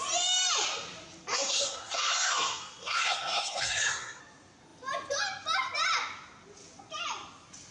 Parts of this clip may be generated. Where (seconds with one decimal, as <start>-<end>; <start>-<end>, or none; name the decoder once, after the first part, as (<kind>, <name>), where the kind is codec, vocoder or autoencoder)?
1.3-4.2 (codec, SNAC)

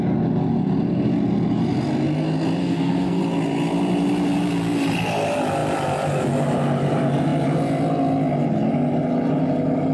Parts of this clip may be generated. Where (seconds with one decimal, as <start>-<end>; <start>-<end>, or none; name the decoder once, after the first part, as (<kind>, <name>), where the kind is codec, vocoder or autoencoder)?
2.6-3.2 (codec, SNAC)

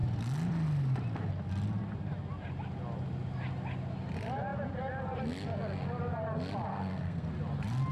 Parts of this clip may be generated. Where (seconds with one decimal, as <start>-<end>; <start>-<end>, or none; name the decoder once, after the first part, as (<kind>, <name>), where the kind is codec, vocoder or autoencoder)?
6.7-7.3 (codec, SNAC)

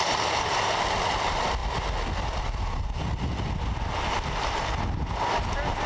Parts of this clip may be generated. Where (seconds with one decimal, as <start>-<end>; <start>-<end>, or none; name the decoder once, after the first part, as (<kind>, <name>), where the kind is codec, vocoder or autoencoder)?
none

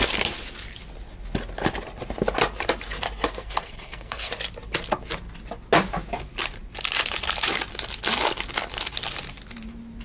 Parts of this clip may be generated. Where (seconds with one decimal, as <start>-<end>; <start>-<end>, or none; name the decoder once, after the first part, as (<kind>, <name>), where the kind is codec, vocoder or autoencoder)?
3.3-4.3 (codec, SNAC)

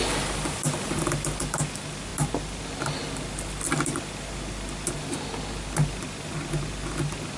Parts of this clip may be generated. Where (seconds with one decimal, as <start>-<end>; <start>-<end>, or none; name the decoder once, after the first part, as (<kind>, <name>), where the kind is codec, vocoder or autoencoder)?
none

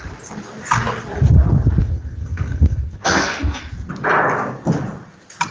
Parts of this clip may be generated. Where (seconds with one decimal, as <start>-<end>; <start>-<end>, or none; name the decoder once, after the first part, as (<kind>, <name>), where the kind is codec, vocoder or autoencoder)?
1.8-3.6 (codec, SNAC)

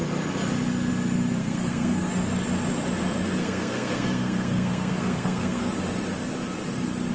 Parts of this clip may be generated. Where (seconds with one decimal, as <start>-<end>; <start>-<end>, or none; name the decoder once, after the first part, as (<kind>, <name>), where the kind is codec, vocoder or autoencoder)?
1.4-2.1 (codec, SNAC); 3.4-5.7